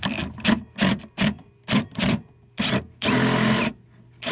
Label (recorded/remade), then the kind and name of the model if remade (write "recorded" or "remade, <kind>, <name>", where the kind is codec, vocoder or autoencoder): recorded